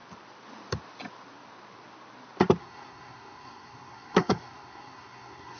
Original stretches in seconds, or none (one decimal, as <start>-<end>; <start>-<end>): 0.0-2.6